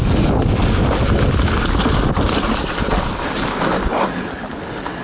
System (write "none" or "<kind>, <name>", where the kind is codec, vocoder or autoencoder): none